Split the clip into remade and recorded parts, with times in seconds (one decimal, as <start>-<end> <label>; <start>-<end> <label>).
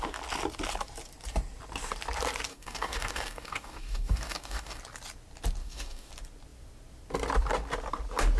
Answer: 0.0-2.5 recorded; 2.5-4.8 remade; 4.8-5.6 recorded; 5.6-6.1 remade; 6.1-8.4 recorded